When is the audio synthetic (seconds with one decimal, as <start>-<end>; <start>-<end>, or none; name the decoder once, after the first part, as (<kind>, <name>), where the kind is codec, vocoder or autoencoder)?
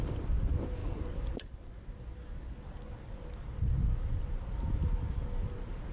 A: none